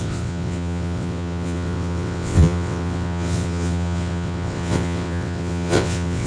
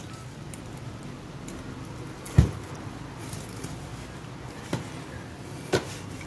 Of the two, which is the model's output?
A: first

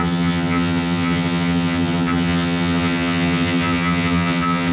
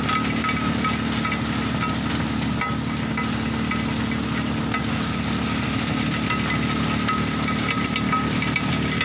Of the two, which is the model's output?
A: first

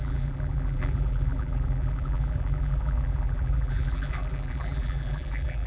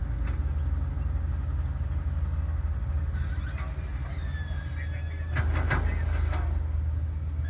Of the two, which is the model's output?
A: first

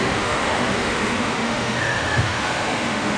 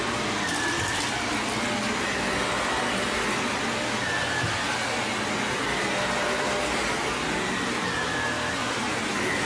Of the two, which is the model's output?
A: first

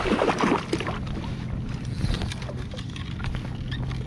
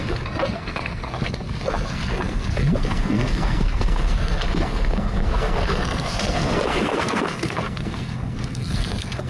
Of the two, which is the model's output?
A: second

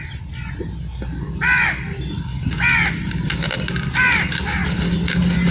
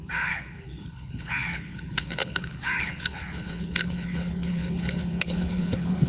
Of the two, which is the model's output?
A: second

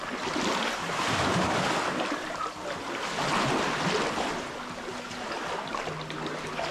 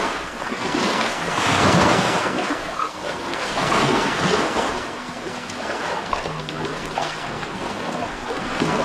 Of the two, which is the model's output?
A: second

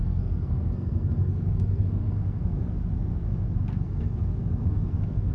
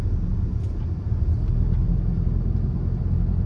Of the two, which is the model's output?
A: first